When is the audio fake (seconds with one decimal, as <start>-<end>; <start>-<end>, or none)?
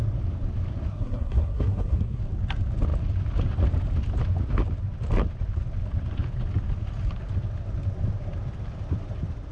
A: 0.9-2.2